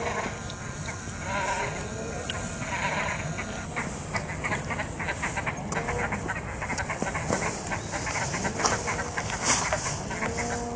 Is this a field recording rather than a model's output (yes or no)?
yes